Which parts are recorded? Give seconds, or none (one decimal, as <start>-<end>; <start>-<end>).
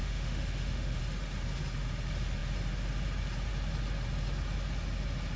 1.0-5.4